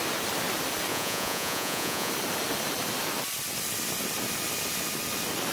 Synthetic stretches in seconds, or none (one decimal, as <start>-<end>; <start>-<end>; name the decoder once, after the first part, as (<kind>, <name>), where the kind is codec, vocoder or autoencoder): 0.9-2.1 (vocoder, Vocos)